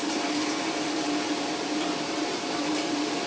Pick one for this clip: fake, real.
fake